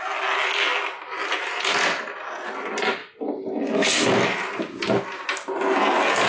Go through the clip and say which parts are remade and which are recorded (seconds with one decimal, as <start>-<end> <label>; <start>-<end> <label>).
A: 0.0-6.3 recorded

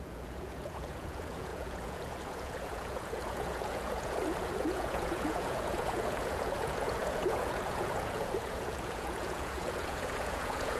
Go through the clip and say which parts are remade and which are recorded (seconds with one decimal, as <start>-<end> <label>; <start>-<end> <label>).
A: 0.0-10.8 remade

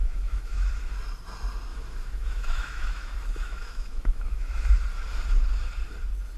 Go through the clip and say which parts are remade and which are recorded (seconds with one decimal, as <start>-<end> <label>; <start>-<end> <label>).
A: 0.0-0.9 remade; 0.9-1.7 recorded; 1.7-4.7 remade; 4.7-6.4 recorded

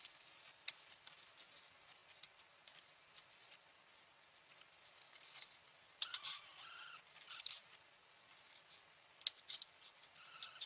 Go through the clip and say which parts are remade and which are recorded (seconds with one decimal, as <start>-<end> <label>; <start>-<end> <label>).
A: 0.0-10.7 recorded

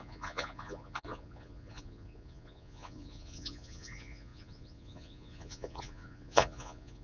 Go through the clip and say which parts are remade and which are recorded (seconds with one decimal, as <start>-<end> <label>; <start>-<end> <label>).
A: 0.0-7.0 remade

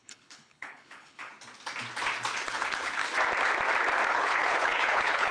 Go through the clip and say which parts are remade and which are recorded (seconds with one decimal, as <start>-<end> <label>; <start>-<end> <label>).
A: 0.0-1.3 remade; 1.3-2.5 recorded; 2.5-3.0 remade; 3.0-4.1 recorded; 4.1-5.3 remade

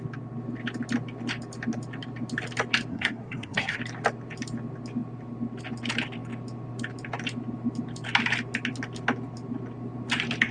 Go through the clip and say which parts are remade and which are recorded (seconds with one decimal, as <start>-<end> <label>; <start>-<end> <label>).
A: 0.0-2.9 recorded; 2.9-3.8 remade; 3.8-10.5 recorded

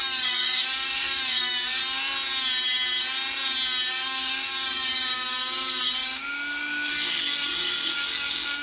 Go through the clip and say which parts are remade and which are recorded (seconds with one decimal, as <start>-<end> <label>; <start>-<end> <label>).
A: 0.0-1.8 remade; 1.8-3.9 recorded; 3.9-8.6 remade